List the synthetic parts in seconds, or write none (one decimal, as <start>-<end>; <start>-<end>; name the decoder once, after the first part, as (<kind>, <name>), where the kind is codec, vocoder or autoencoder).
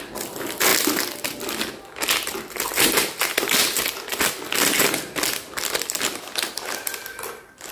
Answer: 2.7-6.5 (vocoder, BigVGAN v2); 7.0-7.7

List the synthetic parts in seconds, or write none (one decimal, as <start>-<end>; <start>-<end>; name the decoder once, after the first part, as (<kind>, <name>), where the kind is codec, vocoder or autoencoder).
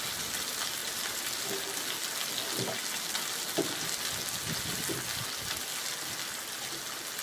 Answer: none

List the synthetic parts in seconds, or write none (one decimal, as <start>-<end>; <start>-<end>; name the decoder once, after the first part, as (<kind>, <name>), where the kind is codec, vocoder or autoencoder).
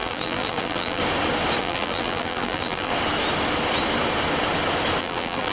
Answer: 0.0-1.0 (vocoder, BigVGAN v2); 1.6-2.9; 5.0-5.5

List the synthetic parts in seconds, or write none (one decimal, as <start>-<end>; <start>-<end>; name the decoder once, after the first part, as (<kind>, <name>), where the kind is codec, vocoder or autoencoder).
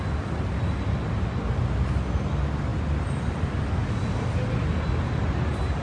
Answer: none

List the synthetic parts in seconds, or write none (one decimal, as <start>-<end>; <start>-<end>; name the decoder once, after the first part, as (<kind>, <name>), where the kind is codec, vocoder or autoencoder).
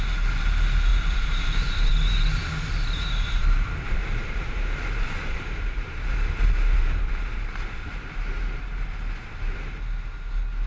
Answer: 0.9-1.9 (vocoder, BigVGAN v2); 3.4-7.6